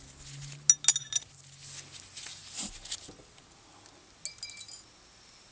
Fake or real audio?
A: real